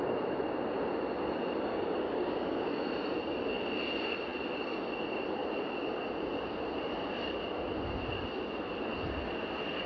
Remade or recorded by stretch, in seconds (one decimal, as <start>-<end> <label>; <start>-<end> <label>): 0.0-1.7 recorded; 1.7-2.7 remade; 2.7-9.9 recorded